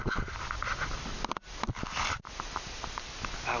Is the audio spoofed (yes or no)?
no